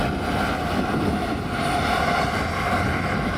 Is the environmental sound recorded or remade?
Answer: recorded